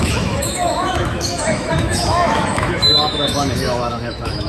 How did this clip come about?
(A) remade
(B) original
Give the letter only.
A